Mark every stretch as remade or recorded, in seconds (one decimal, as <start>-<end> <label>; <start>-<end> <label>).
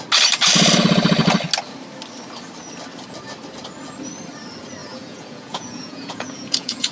0.0-4.8 recorded; 4.8-6.9 remade